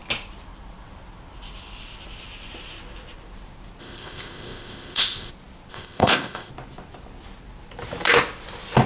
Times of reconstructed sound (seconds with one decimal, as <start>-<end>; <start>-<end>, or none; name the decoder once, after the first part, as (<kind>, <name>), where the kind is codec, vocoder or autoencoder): 3.8-5.3 (codec, ZipCodec); 5.7-6.5

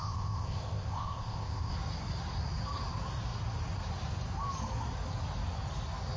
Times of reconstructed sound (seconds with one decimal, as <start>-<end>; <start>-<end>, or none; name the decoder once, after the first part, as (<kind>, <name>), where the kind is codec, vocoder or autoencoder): 0.0-1.7 (codec, ZipCodec)

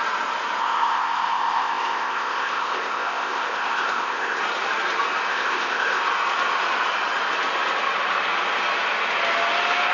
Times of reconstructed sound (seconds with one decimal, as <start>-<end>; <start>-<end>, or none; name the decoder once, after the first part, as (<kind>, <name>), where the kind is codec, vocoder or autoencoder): 0.6-4.4 (codec, ZipCodec); 5.3-6.0

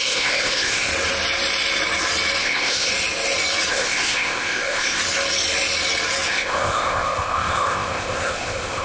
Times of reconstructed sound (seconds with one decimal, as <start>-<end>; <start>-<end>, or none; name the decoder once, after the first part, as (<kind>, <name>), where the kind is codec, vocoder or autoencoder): 0.0-0.9 (codec, ZipCodec); 2.4-2.9; 3.7-5.0; 6.3-8.8

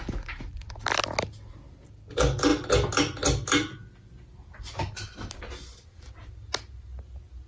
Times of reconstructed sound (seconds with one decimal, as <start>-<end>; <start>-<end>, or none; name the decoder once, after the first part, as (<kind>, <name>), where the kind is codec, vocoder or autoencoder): none

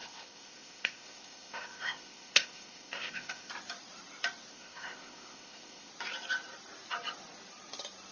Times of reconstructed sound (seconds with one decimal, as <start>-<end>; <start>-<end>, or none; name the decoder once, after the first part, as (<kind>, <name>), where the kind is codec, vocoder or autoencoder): 0.0-3.5 (codec, ZipCodec); 4.5-5.9

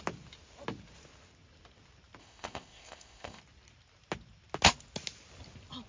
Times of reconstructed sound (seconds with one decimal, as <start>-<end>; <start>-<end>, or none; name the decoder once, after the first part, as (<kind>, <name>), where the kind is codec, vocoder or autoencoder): 2.2-3.4 (codec, ZipCodec)